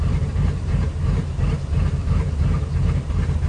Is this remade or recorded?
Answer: remade